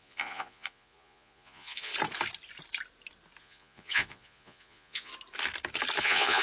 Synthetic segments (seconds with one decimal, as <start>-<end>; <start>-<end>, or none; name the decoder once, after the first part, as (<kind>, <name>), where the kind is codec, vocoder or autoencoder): 0.0-1.9 (vocoder, Vocos); 3.4-5.1; 6.0-6.4